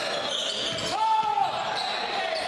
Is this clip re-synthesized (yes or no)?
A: no